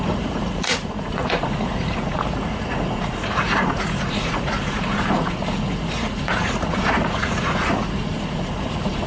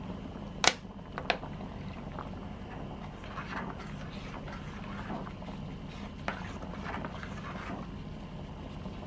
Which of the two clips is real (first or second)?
second